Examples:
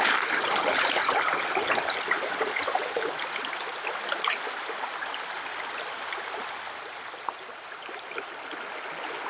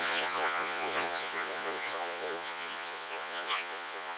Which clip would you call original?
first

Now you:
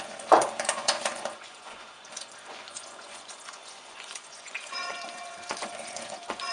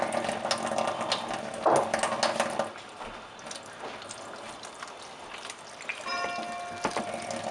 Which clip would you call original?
second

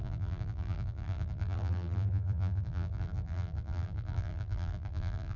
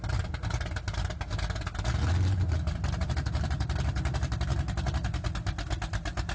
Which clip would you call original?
second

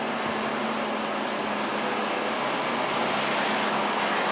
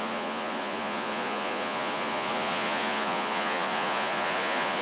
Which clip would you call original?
first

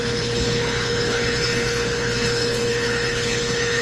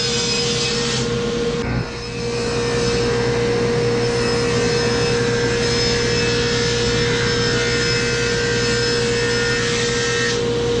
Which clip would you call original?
second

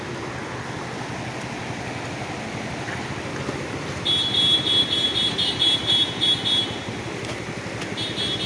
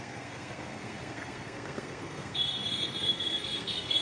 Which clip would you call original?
first